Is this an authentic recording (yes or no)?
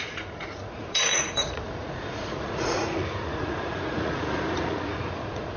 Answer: no